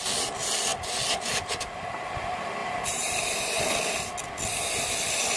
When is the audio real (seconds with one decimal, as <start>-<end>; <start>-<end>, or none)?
0.0-2.6; 3.6-5.4